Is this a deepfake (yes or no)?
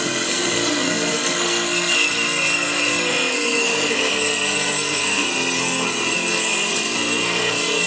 yes